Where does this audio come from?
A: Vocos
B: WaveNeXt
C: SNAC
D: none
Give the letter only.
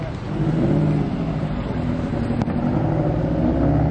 D